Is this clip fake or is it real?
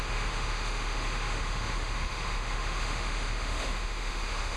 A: fake